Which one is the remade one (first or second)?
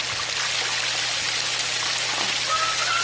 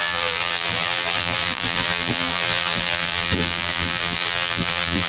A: second